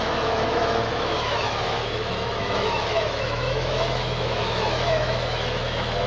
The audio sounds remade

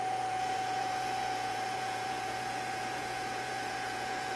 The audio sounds remade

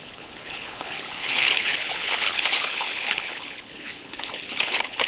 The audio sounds remade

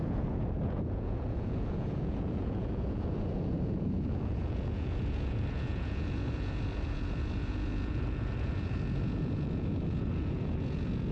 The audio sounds remade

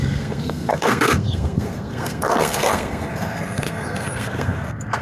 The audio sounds remade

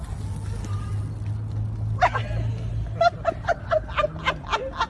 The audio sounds recorded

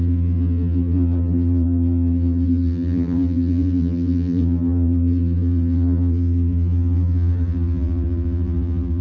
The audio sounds remade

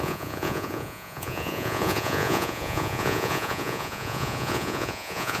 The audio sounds remade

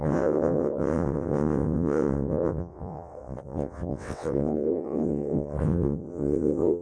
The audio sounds remade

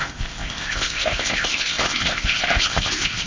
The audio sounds remade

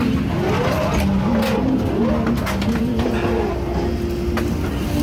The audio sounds recorded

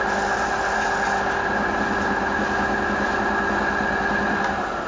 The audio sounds recorded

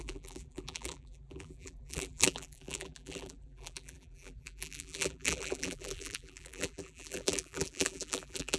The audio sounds remade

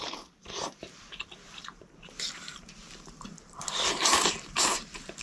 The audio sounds remade